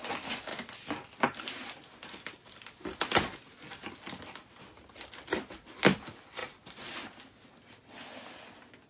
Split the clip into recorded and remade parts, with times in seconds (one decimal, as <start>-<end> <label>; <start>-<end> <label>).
0.0-6.4 recorded; 6.4-7.2 remade; 7.2-8.9 recorded